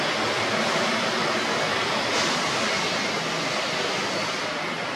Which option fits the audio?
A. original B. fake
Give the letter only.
A